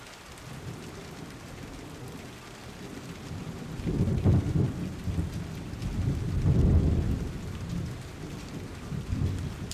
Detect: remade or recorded recorded